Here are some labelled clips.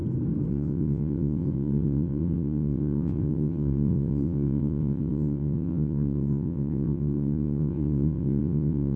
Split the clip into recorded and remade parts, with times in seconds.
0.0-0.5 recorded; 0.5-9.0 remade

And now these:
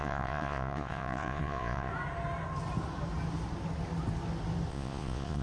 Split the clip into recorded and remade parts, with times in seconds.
0.0-1.9 remade; 1.9-4.7 recorded; 4.7-5.4 remade

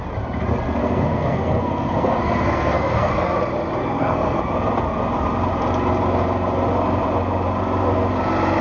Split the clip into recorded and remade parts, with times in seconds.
0.0-0.8 recorded; 0.8-3.1 remade; 3.1-3.8 recorded; 3.8-4.4 remade; 4.4-8.6 recorded

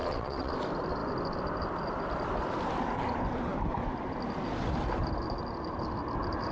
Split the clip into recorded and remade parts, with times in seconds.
0.0-0.5 remade; 0.5-6.5 recorded

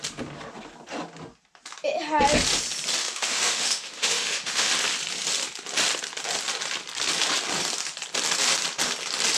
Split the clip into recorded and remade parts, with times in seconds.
0.0-3.0 recorded; 3.0-4.7 remade; 4.7-9.4 recorded

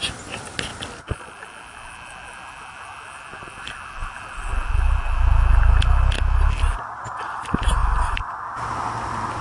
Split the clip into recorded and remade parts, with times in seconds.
0.0-9.4 recorded

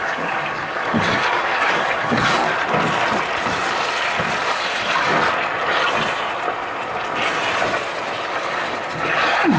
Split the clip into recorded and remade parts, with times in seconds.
0.0-2.5 remade; 2.5-4.5 recorded; 4.5-5.1 remade; 5.1-8.3 recorded; 8.3-9.6 remade

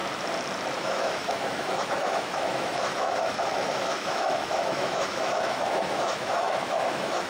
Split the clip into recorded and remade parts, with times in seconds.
0.0-0.8 recorded; 0.8-7.3 remade